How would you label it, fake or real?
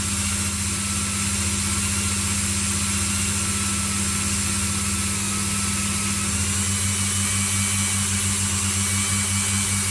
real